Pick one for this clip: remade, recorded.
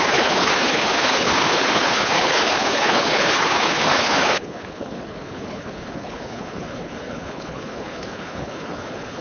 remade